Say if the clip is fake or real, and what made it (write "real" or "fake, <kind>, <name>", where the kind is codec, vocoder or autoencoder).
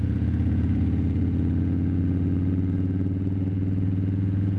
fake, vocoder, Vocos